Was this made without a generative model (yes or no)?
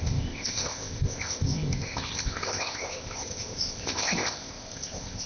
no